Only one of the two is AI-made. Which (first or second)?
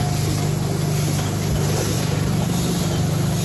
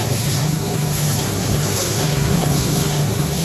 second